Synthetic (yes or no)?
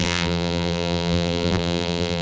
yes